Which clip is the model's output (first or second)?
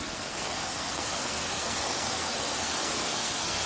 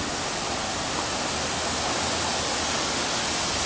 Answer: first